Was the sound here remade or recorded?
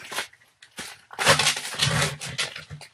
recorded